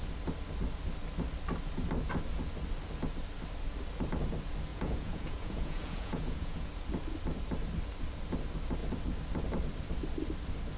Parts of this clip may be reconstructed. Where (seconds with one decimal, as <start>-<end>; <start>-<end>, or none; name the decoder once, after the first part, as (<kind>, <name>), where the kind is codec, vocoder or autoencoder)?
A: 4.7-6.7 (vocoder, Vocos)